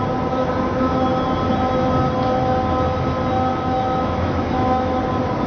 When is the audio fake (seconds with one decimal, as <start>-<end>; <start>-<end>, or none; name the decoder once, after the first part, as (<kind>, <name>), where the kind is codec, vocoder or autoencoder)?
3.5-5.0 (autoencoder, DAC-VAE)